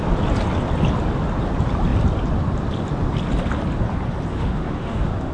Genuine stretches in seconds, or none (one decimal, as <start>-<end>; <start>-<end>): 0.0-4.3